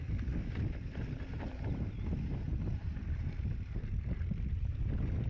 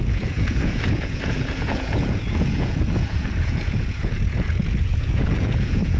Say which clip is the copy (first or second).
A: second